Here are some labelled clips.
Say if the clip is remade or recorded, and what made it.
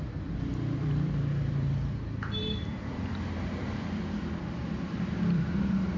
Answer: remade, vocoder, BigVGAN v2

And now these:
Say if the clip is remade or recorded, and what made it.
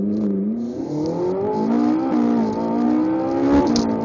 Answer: recorded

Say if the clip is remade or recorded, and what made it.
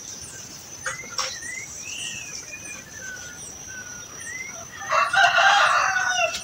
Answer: remade, vocoder, BigVGAN v2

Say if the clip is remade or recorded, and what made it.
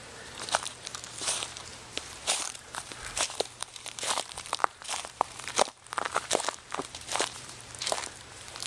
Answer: remade, vocoder, BigVGAN v2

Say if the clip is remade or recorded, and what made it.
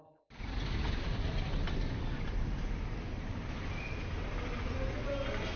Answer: recorded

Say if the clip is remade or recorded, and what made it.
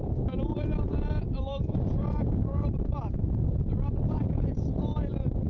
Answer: remade, vocoder, BigVGAN v2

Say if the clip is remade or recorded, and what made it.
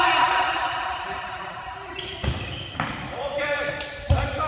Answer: remade, vocoder, BigVGAN v2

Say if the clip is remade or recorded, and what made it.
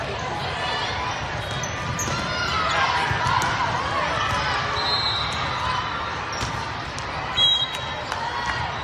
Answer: recorded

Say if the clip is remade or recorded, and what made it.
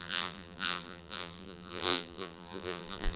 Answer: remade, vocoder, BigVGAN v2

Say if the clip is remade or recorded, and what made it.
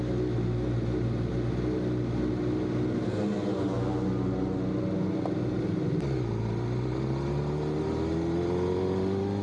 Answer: recorded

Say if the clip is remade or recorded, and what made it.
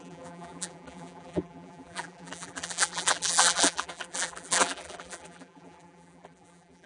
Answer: remade, vocoder, BigVGAN v2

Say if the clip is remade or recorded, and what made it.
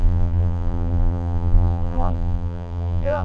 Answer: remade, vocoder, BigVGAN v2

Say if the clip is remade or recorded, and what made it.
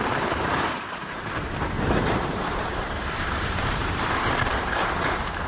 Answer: remade, vocoder, BigVGAN v2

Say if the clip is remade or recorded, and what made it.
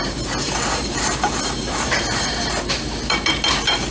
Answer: remade, vocoder, BigVGAN v2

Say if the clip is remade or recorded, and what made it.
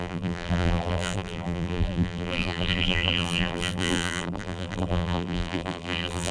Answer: remade, vocoder, BigVGAN v2